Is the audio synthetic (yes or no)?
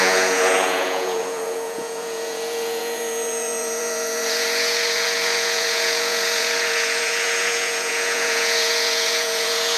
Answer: yes